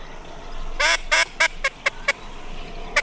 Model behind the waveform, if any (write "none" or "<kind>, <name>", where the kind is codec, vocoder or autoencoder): none